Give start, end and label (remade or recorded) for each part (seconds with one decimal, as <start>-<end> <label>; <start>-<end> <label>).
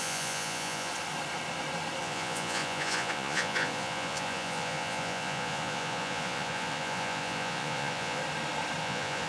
0.0-0.9 remade; 0.9-2.0 recorded; 2.0-8.2 remade; 8.2-8.8 recorded; 8.8-9.3 remade